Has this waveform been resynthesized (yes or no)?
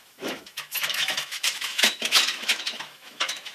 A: yes